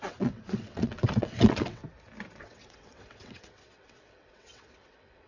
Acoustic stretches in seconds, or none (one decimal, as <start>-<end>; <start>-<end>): 1.8-2.4